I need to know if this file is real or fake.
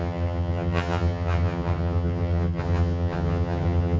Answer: fake